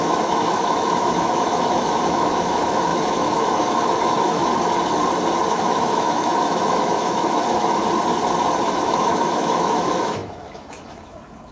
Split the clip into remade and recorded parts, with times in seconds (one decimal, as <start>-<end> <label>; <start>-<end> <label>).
0.0-4.4 remade; 4.4-5.5 recorded; 5.5-7.8 remade; 7.8-8.6 recorded; 8.6-11.5 remade